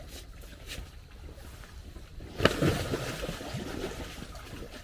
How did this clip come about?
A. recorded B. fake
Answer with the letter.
B